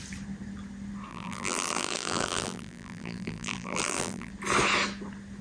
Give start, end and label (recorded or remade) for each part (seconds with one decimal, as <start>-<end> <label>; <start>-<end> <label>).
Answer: 0.0-1.1 recorded; 1.1-4.3 remade; 4.3-5.4 recorded